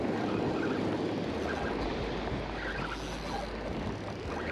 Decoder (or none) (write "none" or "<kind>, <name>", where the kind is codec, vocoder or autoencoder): none